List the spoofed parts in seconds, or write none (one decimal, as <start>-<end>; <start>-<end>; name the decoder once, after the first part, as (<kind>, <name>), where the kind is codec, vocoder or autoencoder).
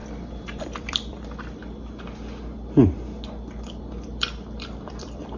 0.0-1.6 (vocoder, BigVGAN v2); 3.8-5.4